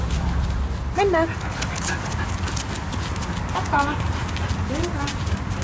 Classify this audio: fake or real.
real